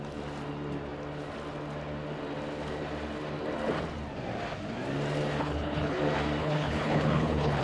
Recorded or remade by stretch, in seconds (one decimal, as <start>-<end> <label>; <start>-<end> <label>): 0.0-5.4 recorded; 5.4-6.0 remade; 6.0-6.4 recorded; 6.4-7.6 remade